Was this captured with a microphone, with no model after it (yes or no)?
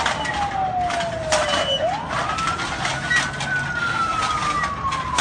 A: yes